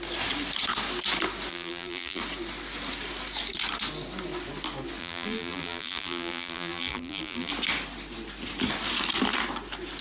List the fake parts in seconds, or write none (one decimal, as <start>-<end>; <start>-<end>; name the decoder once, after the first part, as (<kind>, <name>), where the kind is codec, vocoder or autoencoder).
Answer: 1.5-2.2 (vocoder, BigVGAN v2); 5.0-7.5